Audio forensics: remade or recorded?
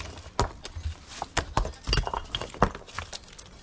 recorded